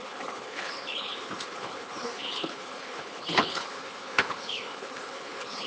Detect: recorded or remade remade